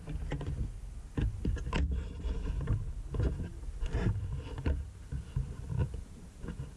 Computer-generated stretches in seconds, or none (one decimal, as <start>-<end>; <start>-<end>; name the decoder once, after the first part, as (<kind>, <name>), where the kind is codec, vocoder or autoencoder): none